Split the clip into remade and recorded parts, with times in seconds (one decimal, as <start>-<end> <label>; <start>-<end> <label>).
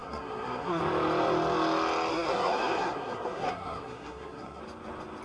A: 0.0-0.8 remade; 0.8-2.1 recorded; 2.1-4.6 remade; 4.6-5.2 recorded